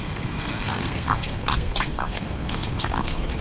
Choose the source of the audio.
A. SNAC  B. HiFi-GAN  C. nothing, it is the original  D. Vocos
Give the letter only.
A